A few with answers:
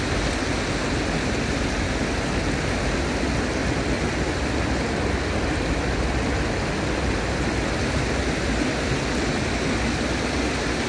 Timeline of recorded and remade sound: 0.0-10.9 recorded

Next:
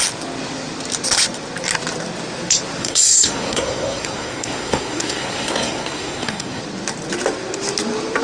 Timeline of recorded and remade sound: 0.0-2.8 recorded; 2.8-6.6 remade; 6.6-8.2 recorded

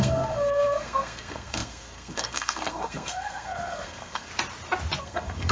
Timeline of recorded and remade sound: 0.0-4.3 remade; 4.3-5.0 recorded; 5.0-5.5 remade

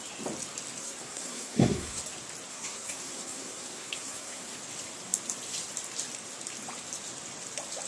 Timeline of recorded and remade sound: 0.0-0.8 recorded; 0.8-2.0 remade; 2.0-2.5 recorded; 2.5-4.6 remade; 4.6-7.9 recorded

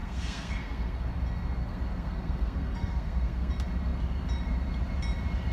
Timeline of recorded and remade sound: 0.0-1.1 remade; 1.1-1.6 recorded; 1.6-3.5 remade; 3.5-5.5 recorded